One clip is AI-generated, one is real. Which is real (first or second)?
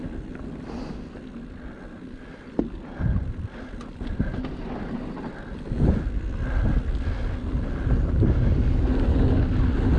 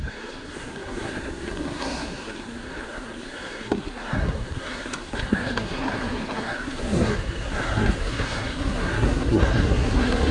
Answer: first